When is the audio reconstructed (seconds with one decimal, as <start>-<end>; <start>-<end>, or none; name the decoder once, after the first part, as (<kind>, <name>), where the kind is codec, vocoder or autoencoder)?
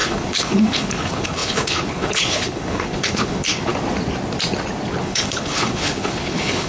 0.0-3.7 (codec, HILCodec); 5.0-6.7